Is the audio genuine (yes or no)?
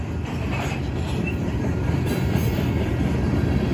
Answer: no